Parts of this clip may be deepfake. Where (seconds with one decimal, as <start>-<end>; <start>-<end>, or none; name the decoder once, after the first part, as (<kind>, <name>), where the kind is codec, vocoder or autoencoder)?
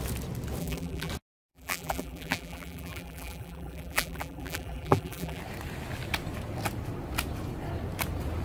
0.6-1.1 (vocoder, BigVGAN v2); 1.5-5.4